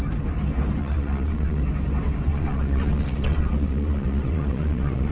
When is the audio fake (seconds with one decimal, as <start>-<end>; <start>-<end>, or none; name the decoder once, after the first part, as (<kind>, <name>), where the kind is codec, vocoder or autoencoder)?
0.8-1.6 (vocoder, WaveNeXt); 2.3-5.1

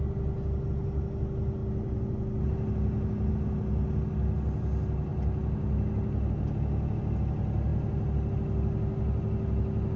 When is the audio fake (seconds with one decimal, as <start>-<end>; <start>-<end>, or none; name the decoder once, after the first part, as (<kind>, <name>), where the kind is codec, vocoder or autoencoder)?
none

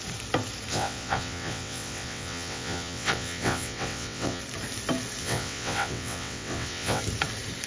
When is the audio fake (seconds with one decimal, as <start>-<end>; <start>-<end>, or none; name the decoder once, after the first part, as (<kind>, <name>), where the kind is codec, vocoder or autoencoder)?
0.7-4.4 (vocoder, WaveNeXt); 5.2-7.0

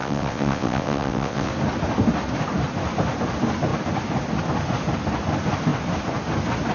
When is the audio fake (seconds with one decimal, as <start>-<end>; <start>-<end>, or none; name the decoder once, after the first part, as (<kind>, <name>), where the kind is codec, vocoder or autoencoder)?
0.0-1.5 (vocoder, WaveNeXt)

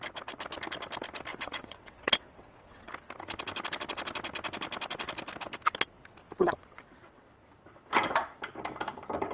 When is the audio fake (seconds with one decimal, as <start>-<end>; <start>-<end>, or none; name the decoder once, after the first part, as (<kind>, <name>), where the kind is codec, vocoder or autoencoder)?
1.3-2.9 (vocoder, WaveNeXt); 6.4-7.2